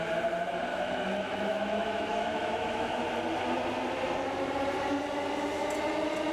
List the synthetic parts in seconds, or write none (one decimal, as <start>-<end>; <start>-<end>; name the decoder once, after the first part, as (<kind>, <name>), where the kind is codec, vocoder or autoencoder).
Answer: 0.7-3.0 (autoencoder, DAC-VAE)